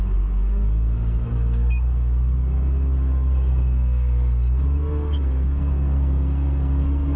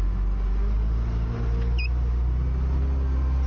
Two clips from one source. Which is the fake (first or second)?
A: first